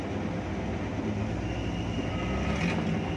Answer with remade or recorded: recorded